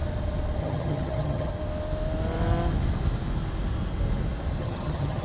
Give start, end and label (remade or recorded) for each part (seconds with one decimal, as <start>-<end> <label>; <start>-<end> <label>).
0.0-0.6 recorded; 0.6-1.5 remade; 1.5-4.6 recorded; 4.6-5.2 remade

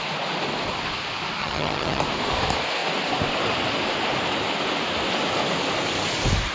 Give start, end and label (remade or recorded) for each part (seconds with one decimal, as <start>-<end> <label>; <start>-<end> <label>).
0.0-1.4 recorded; 1.4-2.0 remade; 2.0-6.5 recorded